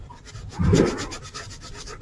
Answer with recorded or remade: recorded